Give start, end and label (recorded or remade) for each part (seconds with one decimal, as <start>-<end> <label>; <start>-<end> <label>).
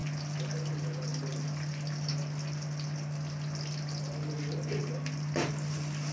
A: 0.0-6.1 recorded